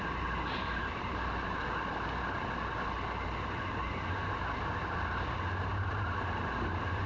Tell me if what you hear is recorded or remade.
recorded